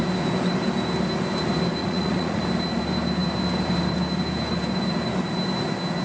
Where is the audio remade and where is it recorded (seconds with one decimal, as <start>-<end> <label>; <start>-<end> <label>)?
0.0-1.8 recorded; 1.8-2.4 remade; 2.4-6.0 recorded